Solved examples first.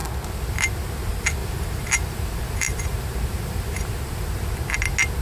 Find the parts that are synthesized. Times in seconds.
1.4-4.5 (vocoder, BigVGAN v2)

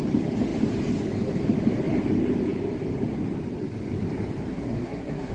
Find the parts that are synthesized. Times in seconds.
4.5-5.3 (codec, SNAC)

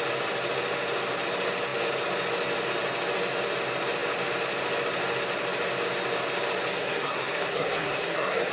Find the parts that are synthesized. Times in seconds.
6.7-8.5 (codec, SNAC)